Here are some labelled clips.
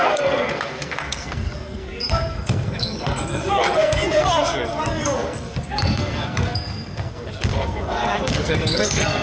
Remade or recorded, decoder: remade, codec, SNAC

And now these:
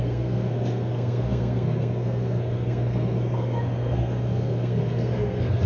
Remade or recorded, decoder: remade, codec, SNAC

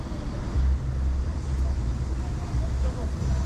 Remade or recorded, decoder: recorded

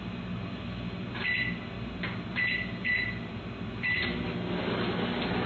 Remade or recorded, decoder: recorded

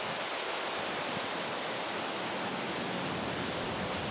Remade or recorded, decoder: recorded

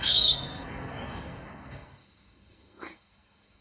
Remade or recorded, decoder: remade, codec, SNAC